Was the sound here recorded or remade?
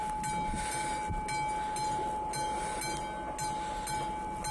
recorded